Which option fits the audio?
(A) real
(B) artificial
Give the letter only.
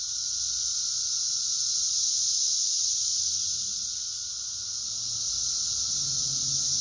A